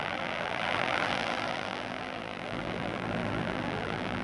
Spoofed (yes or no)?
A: yes